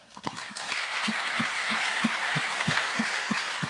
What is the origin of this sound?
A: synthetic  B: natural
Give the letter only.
A